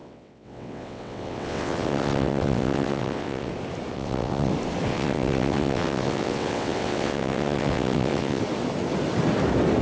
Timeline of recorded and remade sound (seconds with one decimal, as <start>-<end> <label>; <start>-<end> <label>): 0.0-3.5 remade; 3.5-3.9 recorded; 3.9-4.5 remade; 4.5-4.9 recorded; 4.9-8.4 remade; 8.4-9.8 recorded